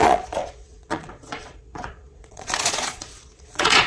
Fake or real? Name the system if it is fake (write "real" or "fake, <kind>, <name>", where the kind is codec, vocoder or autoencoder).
fake, vocoder, Vocos